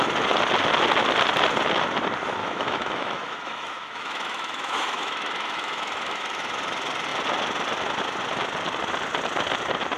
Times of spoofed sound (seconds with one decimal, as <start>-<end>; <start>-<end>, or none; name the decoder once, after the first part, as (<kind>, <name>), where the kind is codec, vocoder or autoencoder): 2.4-6.4 (autoencoder, DAC-VAE)